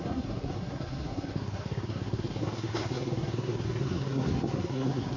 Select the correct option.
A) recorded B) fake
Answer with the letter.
B